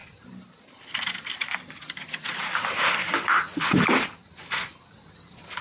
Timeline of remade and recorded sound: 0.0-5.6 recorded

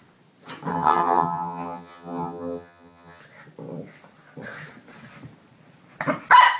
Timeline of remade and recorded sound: 0.0-0.7 recorded; 0.7-3.2 remade; 3.2-6.6 recorded

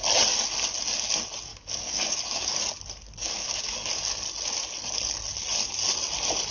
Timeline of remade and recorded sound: 0.0-1.5 recorded; 1.5-2.7 remade; 2.7-3.2 recorded; 3.2-3.9 remade; 3.9-6.5 recorded

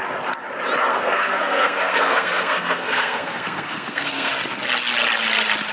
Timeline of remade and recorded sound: 0.0-0.9 recorded; 0.9-4.3 remade; 4.3-5.7 recorded